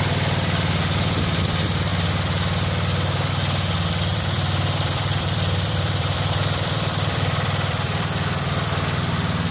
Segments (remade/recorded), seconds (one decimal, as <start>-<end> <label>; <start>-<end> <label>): 0.0-4.1 recorded; 4.1-9.0 remade; 9.0-9.5 recorded